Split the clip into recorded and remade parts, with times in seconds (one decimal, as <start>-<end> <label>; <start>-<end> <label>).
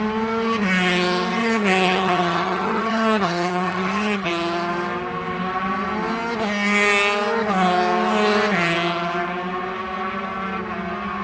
0.0-1.4 recorded; 1.4-4.3 remade; 4.3-11.2 recorded